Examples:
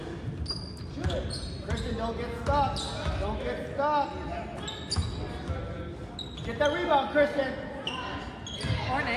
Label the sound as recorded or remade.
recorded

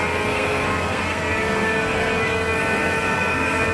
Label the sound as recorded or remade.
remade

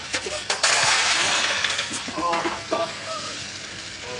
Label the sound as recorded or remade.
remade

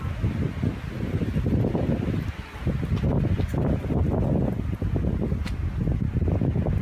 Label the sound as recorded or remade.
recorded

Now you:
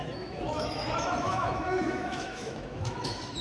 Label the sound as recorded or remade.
remade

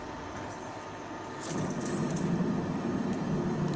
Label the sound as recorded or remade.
recorded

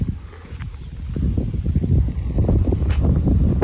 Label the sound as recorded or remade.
recorded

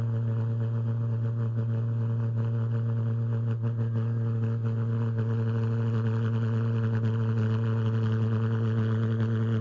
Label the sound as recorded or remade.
recorded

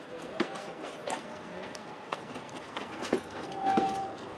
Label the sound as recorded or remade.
remade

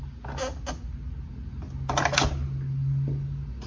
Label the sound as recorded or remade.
recorded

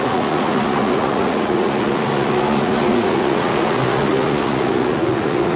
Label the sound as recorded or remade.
remade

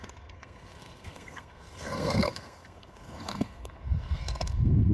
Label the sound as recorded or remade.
remade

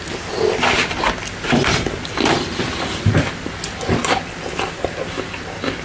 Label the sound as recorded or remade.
recorded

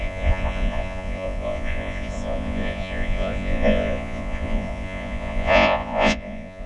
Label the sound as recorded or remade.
remade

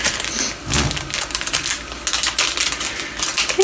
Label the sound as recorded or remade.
recorded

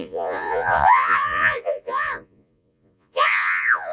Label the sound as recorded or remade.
remade